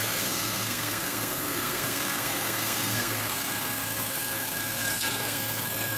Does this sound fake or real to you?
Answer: fake